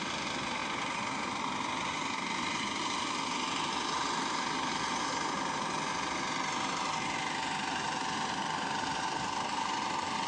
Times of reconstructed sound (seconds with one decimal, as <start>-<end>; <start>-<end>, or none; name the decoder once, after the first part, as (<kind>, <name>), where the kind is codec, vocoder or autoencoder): none